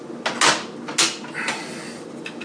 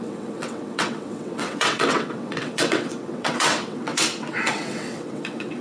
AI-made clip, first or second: second